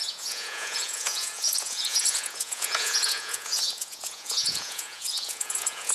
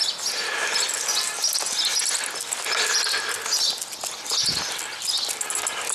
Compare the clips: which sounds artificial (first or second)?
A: first